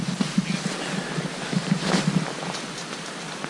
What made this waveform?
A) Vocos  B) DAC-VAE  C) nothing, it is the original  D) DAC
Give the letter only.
C